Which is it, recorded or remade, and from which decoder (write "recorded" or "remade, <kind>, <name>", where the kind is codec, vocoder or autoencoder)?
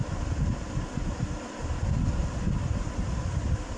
recorded